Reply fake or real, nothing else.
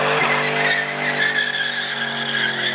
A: real